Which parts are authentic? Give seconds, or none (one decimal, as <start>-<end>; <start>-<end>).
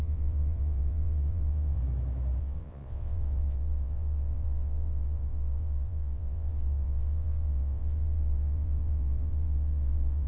1.8-2.4